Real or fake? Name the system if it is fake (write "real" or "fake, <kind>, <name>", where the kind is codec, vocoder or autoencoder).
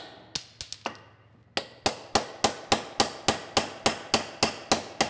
real